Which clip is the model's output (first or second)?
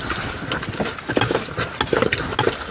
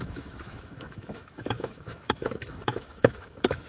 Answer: second